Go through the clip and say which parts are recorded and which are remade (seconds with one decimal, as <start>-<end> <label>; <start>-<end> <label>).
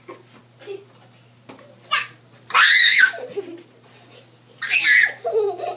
0.0-5.8 recorded